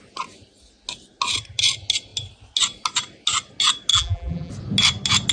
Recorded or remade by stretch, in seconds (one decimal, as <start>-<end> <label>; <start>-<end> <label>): 0.0-3.9 recorded; 3.9-4.5 remade; 4.5-5.3 recorded